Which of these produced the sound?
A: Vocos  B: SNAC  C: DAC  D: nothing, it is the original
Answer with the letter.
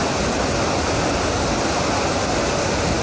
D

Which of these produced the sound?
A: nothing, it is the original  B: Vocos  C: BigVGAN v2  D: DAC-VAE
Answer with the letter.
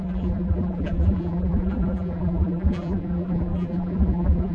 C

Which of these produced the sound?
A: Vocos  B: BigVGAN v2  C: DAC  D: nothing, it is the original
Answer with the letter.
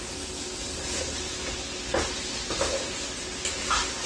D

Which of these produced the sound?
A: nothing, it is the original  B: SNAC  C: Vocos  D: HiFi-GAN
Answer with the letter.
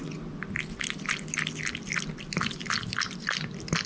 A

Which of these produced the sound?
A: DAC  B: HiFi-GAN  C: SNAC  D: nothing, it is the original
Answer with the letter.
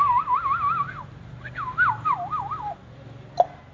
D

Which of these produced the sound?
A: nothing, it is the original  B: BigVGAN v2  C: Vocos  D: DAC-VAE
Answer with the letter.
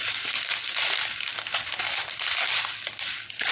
A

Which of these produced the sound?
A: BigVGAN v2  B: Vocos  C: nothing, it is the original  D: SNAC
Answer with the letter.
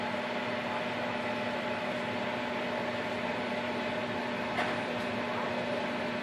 C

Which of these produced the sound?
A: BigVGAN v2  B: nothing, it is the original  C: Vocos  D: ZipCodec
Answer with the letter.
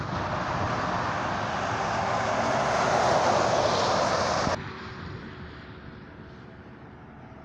B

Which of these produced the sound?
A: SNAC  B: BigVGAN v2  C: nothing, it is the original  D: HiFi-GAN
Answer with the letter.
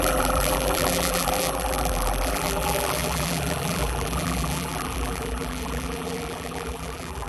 B